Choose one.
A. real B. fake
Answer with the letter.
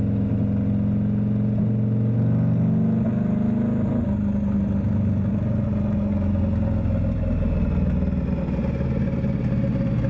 A